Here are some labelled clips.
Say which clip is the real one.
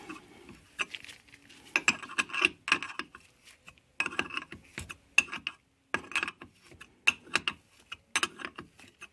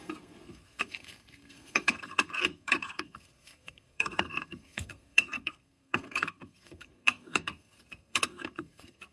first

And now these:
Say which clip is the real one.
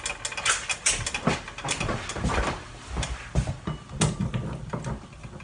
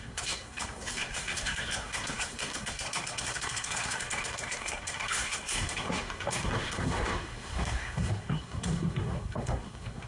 first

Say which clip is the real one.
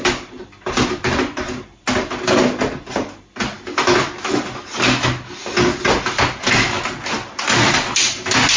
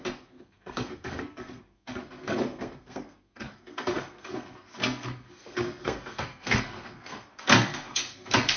first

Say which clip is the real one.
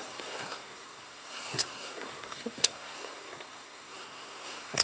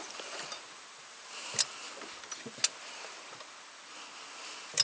second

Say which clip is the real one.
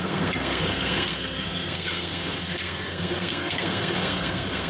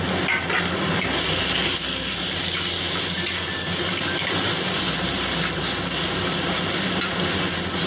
second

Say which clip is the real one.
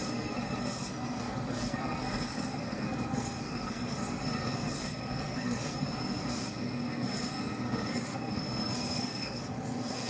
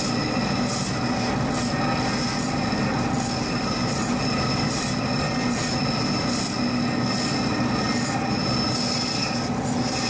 second